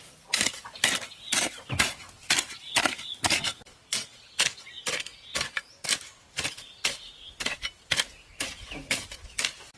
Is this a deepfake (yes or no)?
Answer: no